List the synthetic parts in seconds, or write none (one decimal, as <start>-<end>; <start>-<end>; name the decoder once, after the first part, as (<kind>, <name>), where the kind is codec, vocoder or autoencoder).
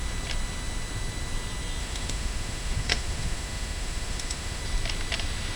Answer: 1.8-4.6 (autoencoder, DAC-VAE)